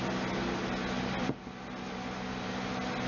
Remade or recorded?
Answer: recorded